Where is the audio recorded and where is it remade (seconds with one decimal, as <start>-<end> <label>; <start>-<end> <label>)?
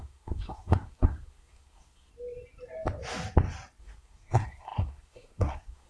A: 0.0-2.1 remade; 2.1-3.8 recorded; 3.8-5.9 remade